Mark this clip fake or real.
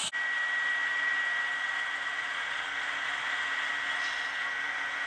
real